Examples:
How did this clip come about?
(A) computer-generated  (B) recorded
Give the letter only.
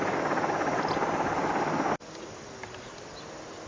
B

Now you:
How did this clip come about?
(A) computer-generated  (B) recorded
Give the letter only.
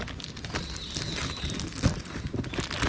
B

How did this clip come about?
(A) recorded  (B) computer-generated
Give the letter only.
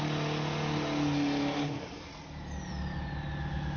A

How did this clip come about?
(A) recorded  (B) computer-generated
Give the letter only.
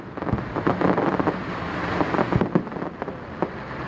A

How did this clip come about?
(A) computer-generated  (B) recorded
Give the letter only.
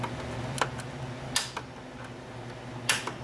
B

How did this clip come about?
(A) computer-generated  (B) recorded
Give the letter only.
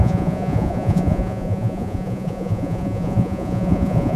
A